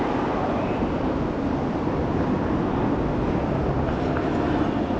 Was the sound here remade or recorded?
recorded